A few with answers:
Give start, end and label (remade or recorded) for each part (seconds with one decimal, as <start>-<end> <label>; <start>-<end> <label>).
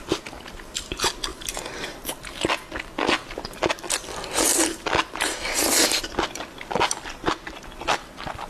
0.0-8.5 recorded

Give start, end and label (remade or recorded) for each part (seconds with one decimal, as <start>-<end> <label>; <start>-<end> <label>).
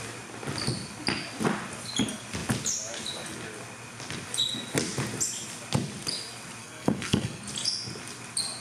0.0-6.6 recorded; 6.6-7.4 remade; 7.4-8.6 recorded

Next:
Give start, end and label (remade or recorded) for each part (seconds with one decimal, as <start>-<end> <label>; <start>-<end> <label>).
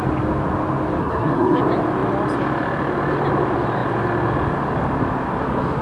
0.0-1.0 recorded; 1.0-1.6 remade; 1.6-5.8 recorded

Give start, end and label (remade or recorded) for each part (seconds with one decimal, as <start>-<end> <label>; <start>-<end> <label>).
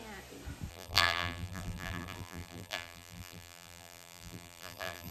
0.0-0.7 recorded; 0.7-5.1 remade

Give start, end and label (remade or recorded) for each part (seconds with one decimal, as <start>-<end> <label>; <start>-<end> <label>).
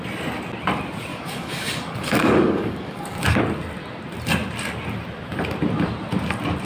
0.0-1.1 recorded; 1.1-3.4 remade; 3.4-6.7 recorded